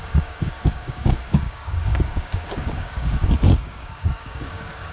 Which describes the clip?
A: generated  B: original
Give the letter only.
A